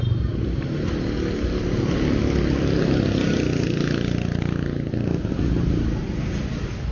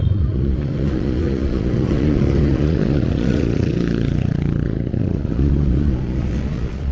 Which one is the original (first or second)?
first